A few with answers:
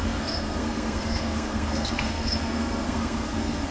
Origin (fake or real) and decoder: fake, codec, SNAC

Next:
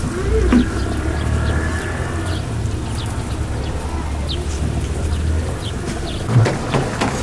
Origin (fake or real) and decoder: real